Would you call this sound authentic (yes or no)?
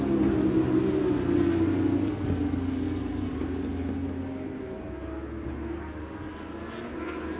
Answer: yes